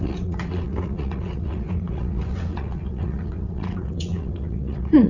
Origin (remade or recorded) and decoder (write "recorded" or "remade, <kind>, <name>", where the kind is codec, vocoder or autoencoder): remade, vocoder, WaveNeXt